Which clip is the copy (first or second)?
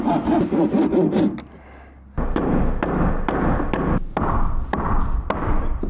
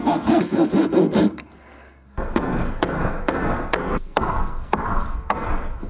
second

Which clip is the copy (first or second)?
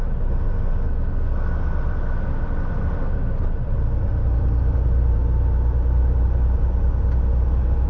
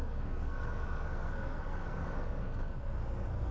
second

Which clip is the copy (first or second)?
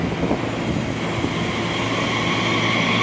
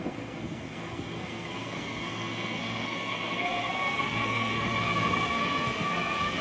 second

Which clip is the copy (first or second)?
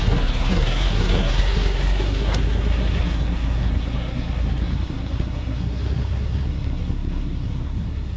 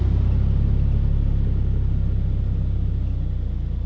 first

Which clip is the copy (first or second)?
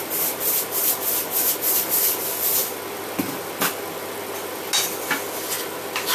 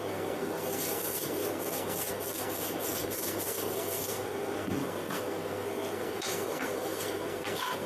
second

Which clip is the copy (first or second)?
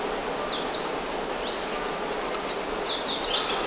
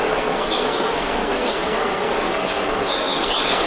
second